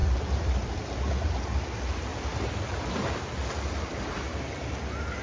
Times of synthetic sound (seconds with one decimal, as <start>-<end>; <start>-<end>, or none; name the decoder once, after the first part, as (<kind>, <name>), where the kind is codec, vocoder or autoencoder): 0.0-1.1 (vocoder, BigVGAN v2); 2.1-2.9; 3.4-4.1